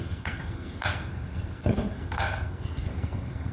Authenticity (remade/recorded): remade